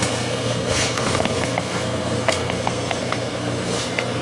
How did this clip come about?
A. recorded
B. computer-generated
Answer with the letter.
B